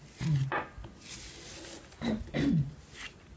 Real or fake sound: real